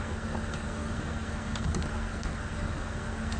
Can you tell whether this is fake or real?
fake